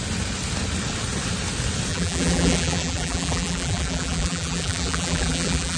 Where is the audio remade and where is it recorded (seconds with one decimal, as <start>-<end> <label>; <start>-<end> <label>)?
0.0-1.9 recorded; 1.9-5.8 remade